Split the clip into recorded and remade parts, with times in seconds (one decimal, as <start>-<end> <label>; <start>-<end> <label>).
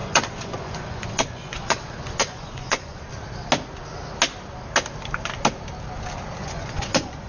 0.0-3.0 remade; 3.0-6.4 recorded; 6.4-7.3 remade